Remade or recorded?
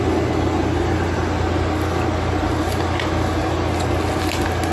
recorded